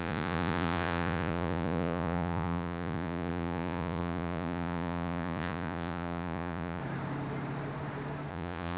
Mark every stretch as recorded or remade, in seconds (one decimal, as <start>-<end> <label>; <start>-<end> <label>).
0.0-6.8 remade; 6.8-8.3 recorded; 8.3-8.8 remade